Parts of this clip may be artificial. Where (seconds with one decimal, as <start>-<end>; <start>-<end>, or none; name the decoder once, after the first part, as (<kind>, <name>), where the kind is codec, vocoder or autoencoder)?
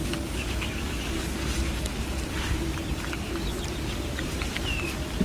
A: 0.0-1.2 (codec, DAC)